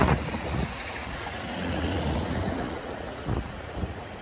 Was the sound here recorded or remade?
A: remade